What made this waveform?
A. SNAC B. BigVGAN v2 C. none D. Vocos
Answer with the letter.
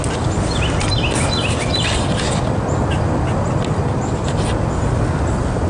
C